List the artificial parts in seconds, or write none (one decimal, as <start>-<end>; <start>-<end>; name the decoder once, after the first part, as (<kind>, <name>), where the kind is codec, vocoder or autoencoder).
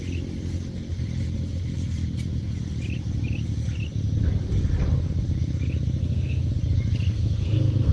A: 6.0-6.5 (codec, SNAC); 7.1-7.9